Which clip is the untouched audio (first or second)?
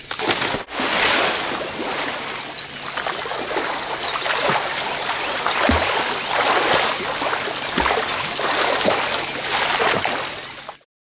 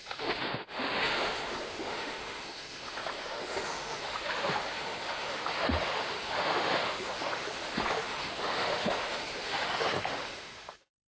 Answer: first